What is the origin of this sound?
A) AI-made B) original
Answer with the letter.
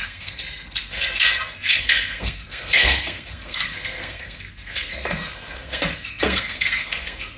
A